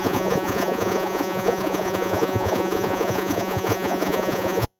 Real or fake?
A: fake